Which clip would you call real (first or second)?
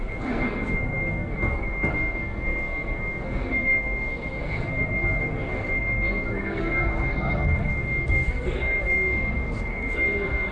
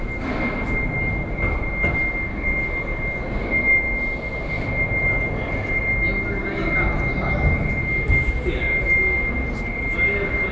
second